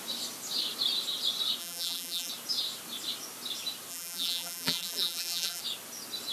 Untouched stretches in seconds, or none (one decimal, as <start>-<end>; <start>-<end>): 0.0-1.6; 2.3-3.9; 5.6-6.3